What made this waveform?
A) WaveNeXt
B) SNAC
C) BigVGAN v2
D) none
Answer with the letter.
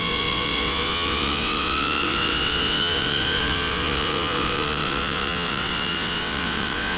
A